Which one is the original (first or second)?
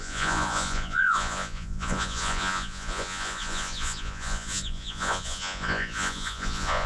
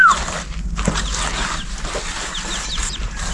second